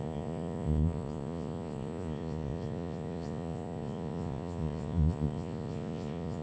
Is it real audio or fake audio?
fake